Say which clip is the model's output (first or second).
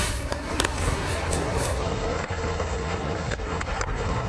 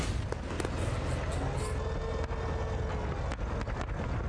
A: first